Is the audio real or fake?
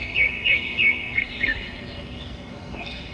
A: fake